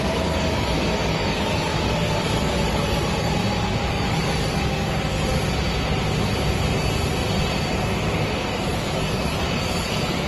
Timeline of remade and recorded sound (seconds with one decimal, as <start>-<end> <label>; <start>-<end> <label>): 0.0-3.4 remade; 3.4-3.9 recorded; 3.9-5.3 remade; 5.3-8.5 recorded; 8.5-10.3 remade